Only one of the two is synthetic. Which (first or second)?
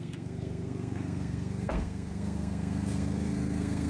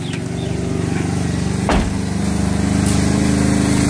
first